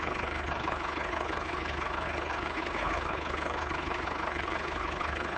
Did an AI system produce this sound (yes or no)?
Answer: yes